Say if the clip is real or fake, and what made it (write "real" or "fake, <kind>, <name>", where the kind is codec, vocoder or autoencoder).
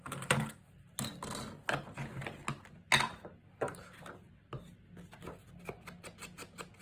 real